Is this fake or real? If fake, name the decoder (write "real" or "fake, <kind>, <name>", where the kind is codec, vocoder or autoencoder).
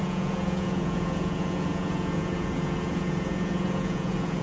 fake, vocoder, Vocos